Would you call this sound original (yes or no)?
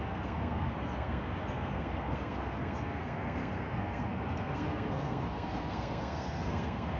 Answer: no